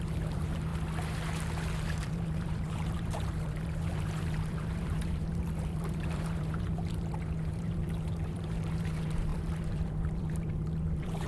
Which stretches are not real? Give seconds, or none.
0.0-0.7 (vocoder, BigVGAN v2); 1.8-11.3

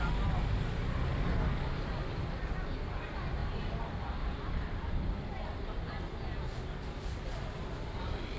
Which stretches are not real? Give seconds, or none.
3.4-5.4 (vocoder, BigVGAN v2)

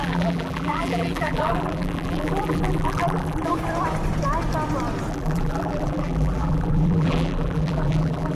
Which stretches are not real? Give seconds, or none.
0.0-3.5 (vocoder, BigVGAN v2); 5.1-8.4

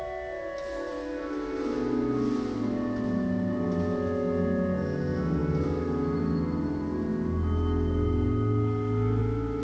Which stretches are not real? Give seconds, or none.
none